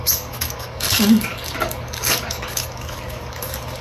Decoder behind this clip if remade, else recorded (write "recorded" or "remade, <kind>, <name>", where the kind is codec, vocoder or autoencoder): remade, codec, DAC